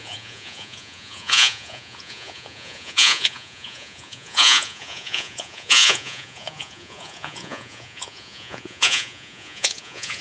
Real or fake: fake